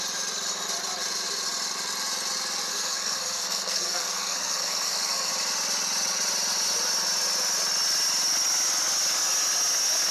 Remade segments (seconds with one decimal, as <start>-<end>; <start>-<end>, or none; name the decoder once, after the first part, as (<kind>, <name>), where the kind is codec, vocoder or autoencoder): 2.7-5.3 (codec, SNAC)